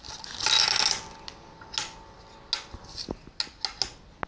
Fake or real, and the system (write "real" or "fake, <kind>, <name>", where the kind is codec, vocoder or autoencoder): real